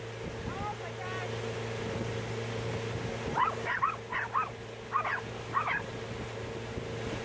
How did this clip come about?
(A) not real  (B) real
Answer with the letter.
B